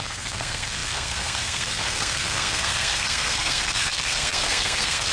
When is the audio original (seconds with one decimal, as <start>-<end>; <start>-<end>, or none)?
none